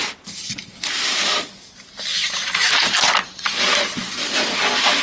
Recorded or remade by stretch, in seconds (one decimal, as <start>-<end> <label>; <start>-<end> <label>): 0.0-5.0 recorded